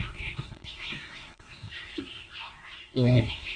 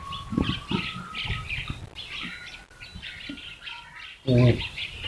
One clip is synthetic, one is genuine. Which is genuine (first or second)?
second